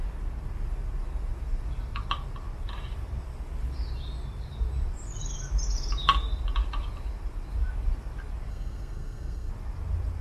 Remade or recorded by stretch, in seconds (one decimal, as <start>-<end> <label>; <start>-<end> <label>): 0.0-8.5 recorded; 8.5-9.5 remade; 9.5-10.2 recorded